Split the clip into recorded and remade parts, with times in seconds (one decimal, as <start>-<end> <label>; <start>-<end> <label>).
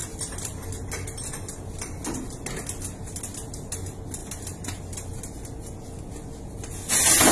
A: 0.0-7.3 recorded